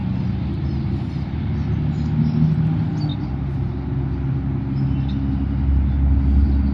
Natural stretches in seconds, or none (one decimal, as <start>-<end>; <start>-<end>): 1.5-3.1; 3.7-6.7